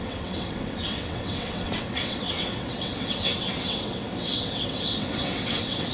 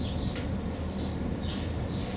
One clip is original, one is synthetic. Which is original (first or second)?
second